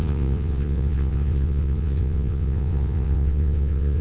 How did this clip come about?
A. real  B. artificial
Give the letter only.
B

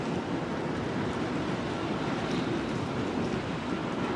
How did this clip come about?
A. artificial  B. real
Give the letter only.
B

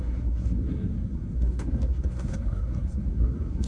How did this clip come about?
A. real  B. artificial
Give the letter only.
B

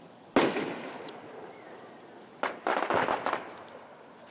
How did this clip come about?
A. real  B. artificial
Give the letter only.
A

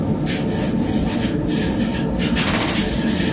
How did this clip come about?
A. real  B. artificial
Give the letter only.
A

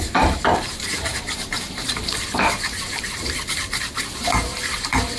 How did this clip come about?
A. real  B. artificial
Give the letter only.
B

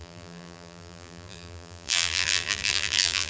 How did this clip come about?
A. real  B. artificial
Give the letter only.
B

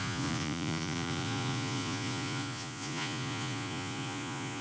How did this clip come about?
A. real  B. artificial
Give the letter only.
B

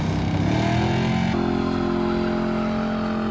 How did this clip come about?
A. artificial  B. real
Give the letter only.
B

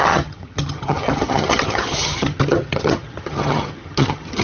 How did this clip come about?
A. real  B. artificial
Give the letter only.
B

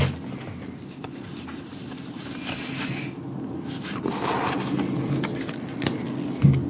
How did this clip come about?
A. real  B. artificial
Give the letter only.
A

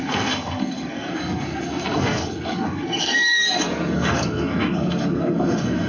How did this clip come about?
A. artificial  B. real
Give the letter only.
A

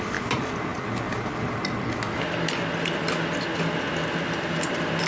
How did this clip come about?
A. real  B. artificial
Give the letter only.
A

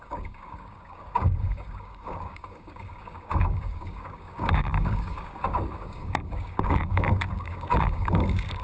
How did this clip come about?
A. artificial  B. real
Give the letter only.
A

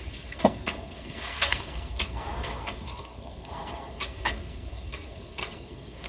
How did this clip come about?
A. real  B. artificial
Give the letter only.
B